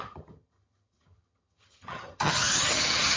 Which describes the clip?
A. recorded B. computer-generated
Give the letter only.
B